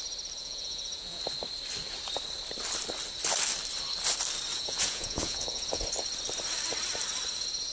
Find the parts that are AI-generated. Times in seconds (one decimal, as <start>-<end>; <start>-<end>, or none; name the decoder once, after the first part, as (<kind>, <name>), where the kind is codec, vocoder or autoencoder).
0.4-1.2 (vocoder, Vocos); 4.5-5.8